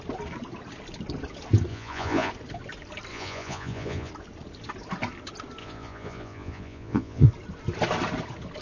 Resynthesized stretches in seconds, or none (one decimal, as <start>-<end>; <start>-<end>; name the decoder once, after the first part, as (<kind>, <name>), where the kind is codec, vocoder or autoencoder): 1.7-2.3 (vocoder, Vocos); 3.1-4.1; 5.6-7.3